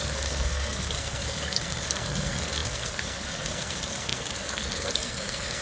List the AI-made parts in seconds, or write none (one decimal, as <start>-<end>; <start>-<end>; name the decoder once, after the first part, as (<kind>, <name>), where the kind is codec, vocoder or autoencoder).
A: 0.0-5.6 (codec, SNAC)